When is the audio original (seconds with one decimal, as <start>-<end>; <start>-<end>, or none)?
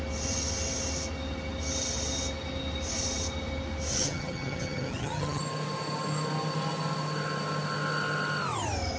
0.0-3.9; 5.4-9.0